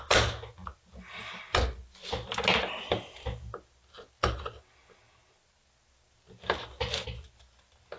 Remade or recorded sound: recorded